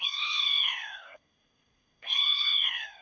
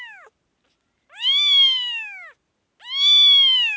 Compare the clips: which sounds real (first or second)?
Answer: second